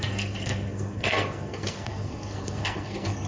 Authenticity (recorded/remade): remade